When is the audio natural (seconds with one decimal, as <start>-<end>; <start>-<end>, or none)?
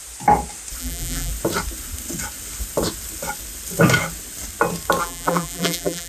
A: 0.0-0.8; 1.3-5.0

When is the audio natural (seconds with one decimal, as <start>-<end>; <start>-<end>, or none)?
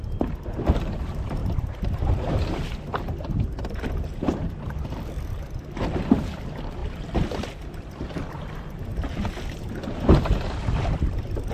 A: 1.4-6.0